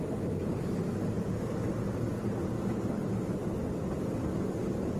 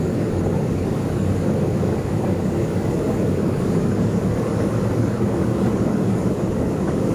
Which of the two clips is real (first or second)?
first